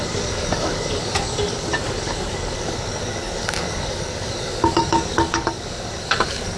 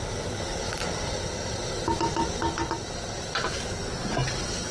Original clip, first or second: second